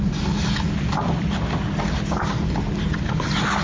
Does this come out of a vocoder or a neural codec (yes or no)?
no